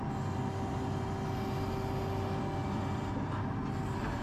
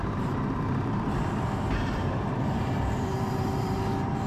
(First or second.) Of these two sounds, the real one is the first